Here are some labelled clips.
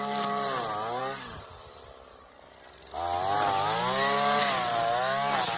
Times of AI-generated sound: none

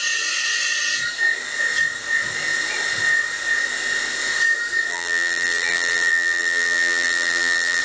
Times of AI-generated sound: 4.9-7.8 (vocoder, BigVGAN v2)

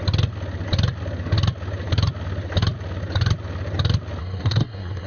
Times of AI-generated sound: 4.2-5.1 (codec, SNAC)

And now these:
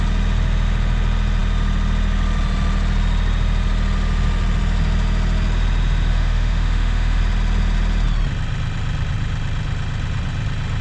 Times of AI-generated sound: 6.1-7.2 (autoencoder, DAC-VAE)

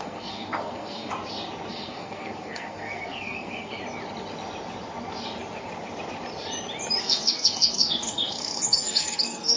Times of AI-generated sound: 0.0-1.1 (codec, SNAC); 1.7-3.8; 7.0-9.6

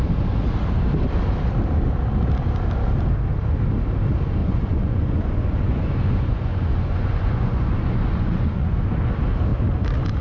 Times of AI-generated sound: 4.4-8.9 (vocoder, Vocos)